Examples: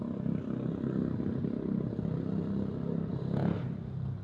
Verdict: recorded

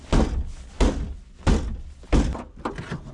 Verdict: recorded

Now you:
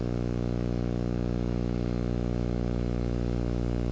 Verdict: remade